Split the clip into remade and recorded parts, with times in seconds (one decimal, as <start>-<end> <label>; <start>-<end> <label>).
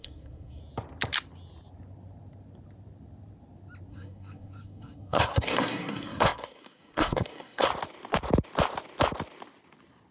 0.0-0.6 remade; 0.6-3.9 recorded; 3.9-7.7 remade; 7.7-10.1 recorded